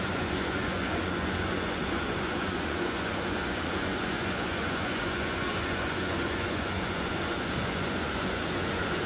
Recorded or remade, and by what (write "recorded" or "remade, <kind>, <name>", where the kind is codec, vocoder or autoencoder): remade, vocoder, Vocos